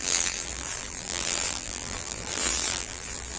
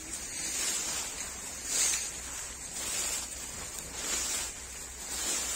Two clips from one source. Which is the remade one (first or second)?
first